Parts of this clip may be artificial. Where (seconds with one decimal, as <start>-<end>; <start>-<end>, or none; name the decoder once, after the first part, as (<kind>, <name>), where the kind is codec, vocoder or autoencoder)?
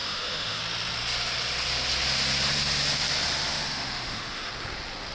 0.0-0.6 (autoencoder, DAC-VAE); 3.5-4.5